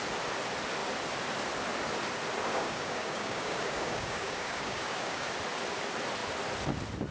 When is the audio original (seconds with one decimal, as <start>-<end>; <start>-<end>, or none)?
0.0-2.5; 5.3-7.1